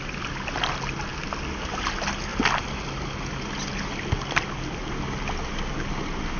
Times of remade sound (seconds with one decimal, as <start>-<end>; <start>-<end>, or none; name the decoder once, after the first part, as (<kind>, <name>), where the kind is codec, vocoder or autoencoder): none